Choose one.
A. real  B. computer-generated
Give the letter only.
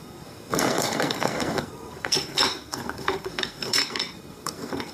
B